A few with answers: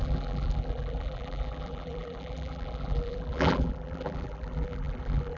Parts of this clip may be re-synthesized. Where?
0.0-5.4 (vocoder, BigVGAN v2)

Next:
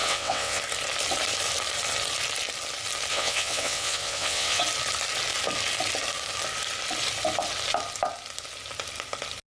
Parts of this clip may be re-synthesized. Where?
0.0-0.6 (vocoder, WaveNeXt); 3.1-4.6

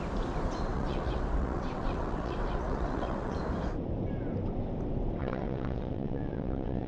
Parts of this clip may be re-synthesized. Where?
0.7-3.4 (vocoder, WaveNeXt); 5.2-6.9

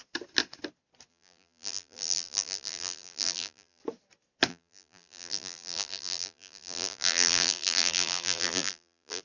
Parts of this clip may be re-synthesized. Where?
1.1-3.8 (vocoder, BigVGAN v2); 4.5-9.2

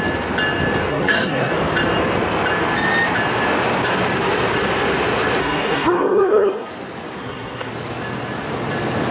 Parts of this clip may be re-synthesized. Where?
0.9-1.5 (codec, SNAC); 5.4-6.7; 7.2-7.7